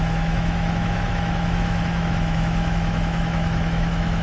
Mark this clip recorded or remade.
remade